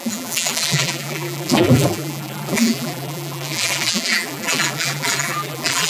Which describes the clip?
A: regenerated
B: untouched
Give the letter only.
A